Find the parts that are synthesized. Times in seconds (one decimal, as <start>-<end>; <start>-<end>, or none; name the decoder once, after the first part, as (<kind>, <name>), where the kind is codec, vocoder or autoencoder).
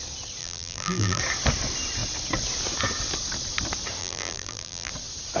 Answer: 0.4-1.2 (vocoder, BigVGAN v2); 4.0-4.9